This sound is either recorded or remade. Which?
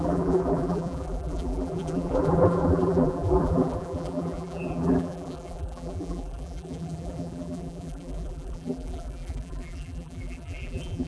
remade